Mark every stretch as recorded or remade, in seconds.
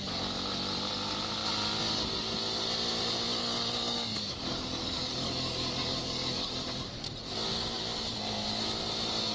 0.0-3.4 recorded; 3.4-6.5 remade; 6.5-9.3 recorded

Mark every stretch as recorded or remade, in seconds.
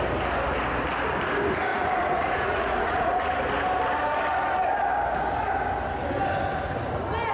0.0-1.7 recorded; 1.7-3.4 remade; 3.4-7.3 recorded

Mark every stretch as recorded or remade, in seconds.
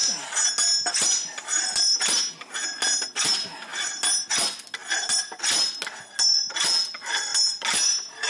0.0-8.3 recorded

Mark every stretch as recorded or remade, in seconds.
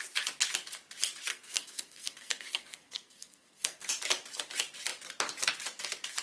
0.0-1.3 recorded; 1.3-3.9 remade; 3.9-6.2 recorded